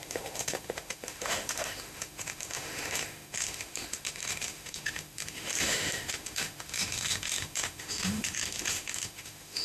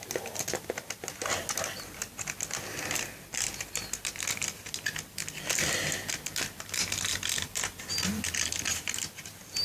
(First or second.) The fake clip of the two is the first